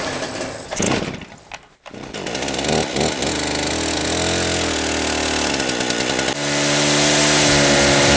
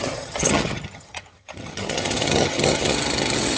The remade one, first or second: second